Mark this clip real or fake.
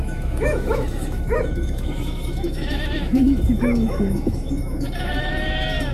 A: fake